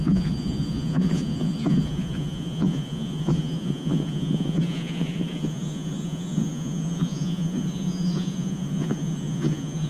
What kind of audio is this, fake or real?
fake